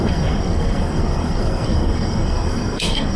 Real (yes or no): no